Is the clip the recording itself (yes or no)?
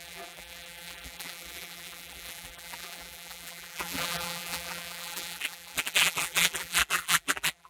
no